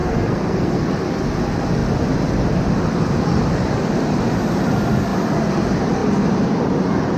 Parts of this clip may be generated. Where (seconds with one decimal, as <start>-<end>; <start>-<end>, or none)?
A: 0.0-0.9